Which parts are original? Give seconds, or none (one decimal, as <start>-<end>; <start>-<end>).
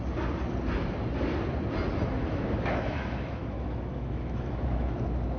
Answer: 0.0-2.2